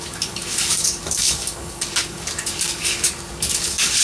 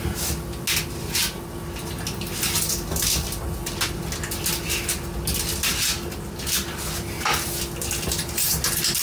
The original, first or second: second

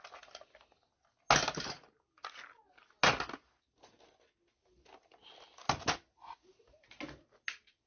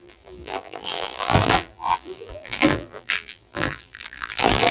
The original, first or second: first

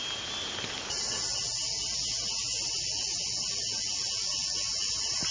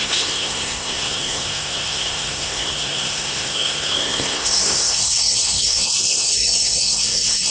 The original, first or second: first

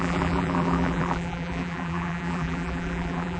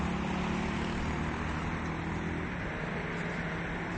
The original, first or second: second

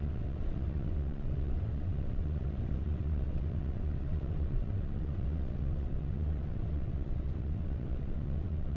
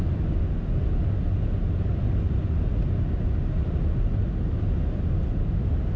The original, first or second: second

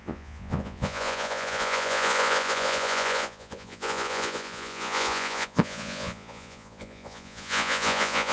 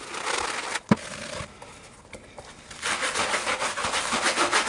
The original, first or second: second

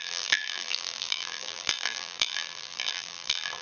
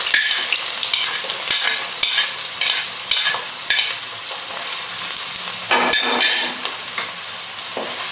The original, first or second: second